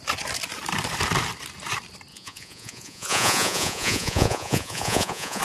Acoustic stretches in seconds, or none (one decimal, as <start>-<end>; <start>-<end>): 0.0-2.1